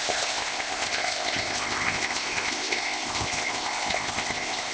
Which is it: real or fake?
fake